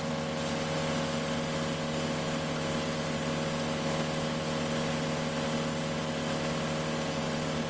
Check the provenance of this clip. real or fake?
real